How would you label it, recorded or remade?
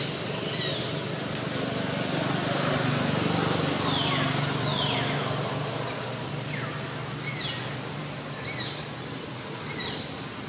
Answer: recorded